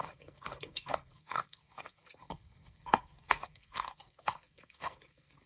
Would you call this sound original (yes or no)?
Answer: no